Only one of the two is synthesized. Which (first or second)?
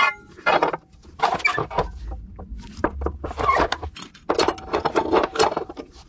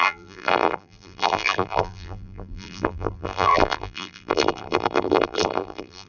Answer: second